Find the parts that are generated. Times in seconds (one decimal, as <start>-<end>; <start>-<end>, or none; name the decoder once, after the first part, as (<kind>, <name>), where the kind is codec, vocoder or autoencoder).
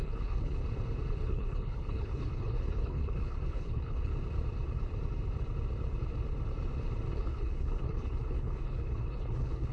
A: 0.0-0.6 (codec, HILCodec); 1.1-4.1; 7.1-9.7